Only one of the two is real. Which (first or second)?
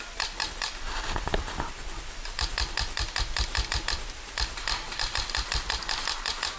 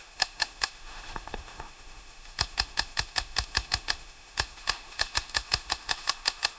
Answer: first